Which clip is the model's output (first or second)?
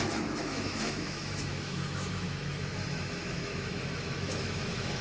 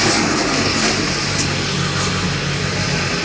first